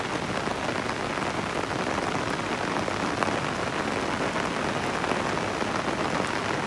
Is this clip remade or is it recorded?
recorded